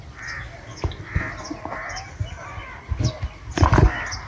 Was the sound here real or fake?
real